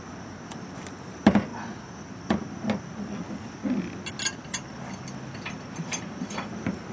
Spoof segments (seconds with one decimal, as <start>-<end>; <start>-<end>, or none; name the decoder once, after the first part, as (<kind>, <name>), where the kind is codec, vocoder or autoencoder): none